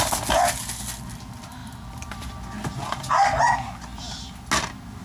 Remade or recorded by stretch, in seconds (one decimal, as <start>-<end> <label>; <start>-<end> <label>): 0.0-5.0 recorded